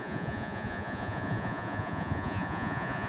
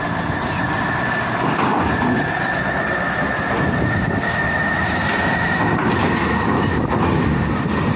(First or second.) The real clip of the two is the second